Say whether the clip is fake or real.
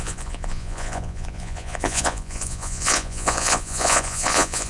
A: fake